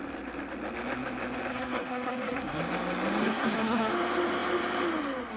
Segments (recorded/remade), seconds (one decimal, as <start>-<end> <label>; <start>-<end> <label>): 0.0-1.5 recorded; 1.5-2.6 remade; 2.6-3.2 recorded; 3.2-3.9 remade; 3.9-5.4 recorded